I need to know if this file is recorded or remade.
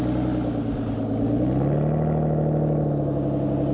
recorded